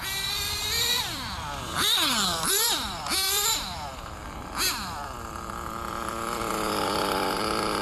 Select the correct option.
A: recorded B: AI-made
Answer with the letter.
B